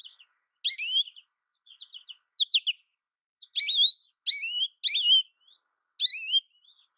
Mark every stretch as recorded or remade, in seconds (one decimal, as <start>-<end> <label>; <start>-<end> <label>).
0.0-7.0 recorded